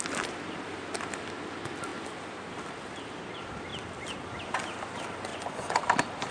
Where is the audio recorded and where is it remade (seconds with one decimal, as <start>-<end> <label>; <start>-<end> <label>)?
0.0-5.3 recorded; 5.3-5.8 remade; 5.8-6.3 recorded